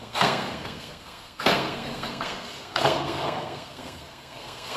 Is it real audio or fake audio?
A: fake